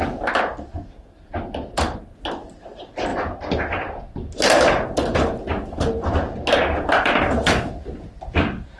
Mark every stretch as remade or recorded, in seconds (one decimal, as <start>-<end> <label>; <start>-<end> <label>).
0.0-8.8 recorded